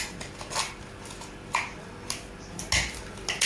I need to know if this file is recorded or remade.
recorded